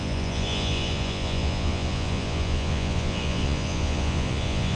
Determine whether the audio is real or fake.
fake